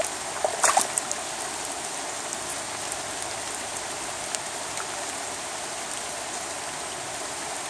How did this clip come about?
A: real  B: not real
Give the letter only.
A